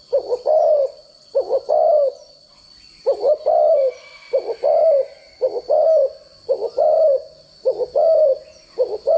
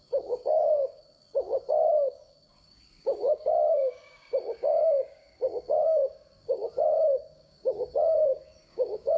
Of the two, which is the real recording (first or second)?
first